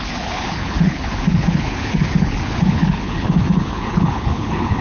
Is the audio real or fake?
fake